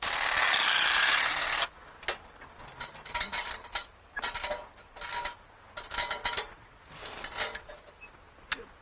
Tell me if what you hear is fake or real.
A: real